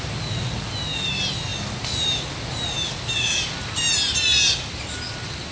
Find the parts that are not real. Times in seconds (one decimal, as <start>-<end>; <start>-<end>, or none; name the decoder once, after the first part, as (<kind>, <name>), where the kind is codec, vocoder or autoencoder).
none